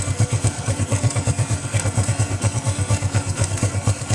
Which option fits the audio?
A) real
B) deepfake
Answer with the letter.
B